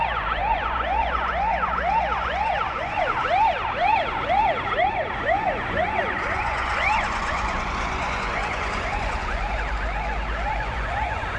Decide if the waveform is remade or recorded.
remade